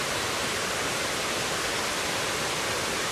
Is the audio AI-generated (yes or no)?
no